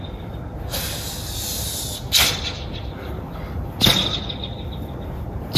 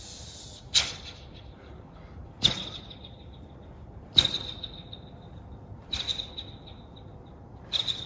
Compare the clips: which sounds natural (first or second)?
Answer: first